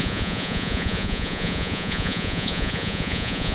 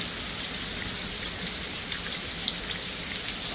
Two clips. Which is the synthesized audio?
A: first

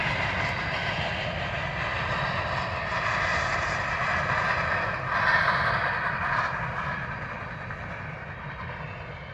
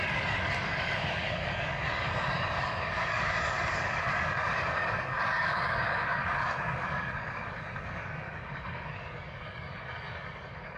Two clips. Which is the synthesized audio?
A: second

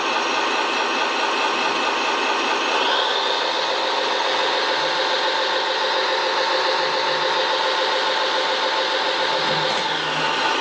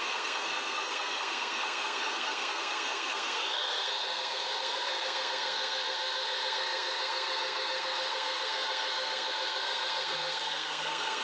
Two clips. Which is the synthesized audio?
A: second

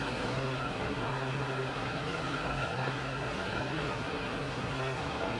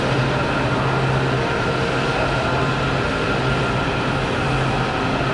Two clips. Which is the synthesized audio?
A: first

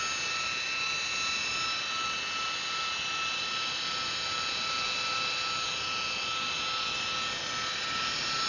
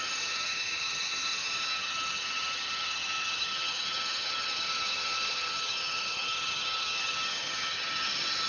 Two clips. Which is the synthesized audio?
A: second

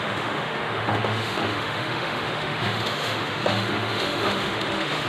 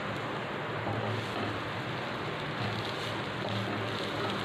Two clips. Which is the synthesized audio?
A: first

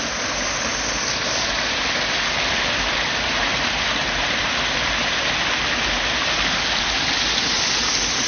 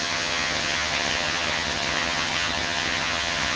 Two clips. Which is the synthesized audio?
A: second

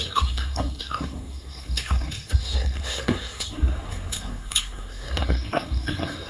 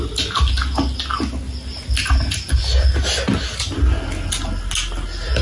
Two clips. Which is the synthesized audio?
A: first